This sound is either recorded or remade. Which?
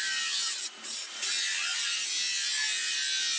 recorded